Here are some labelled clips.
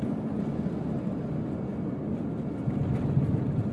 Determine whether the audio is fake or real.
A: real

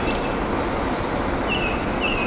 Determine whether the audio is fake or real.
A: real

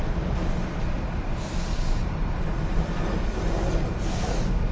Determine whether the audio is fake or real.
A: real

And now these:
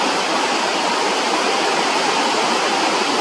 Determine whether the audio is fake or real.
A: real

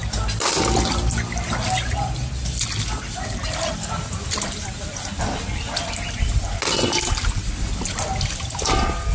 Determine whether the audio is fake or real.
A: real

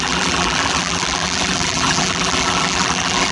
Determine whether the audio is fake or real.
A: fake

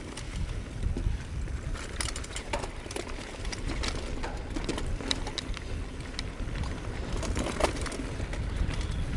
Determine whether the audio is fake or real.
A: real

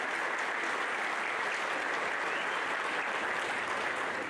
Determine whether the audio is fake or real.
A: real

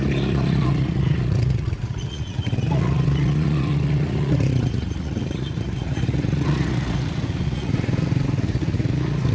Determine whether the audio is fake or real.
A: fake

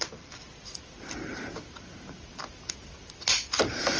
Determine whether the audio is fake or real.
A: real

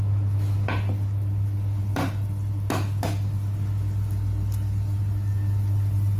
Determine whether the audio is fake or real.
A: real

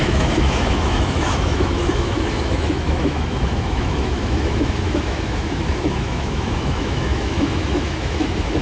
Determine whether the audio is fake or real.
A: fake